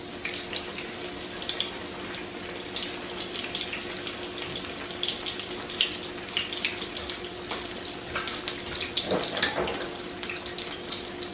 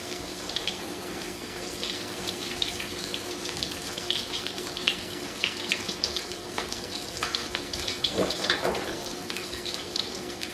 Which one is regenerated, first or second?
second